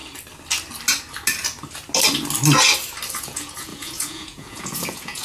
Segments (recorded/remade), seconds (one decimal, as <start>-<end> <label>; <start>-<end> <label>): 0.0-3.1 recorded; 3.1-5.2 remade